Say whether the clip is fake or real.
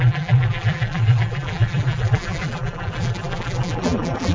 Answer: fake